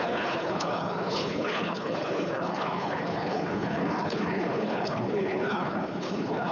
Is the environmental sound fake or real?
fake